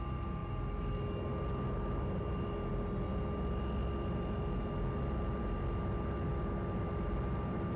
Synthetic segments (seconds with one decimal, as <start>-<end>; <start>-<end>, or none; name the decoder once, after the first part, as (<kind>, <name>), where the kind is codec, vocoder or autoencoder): none